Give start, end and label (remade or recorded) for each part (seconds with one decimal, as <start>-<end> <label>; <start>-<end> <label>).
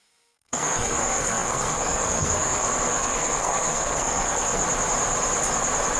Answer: 0.0-4.6 remade; 4.6-6.0 recorded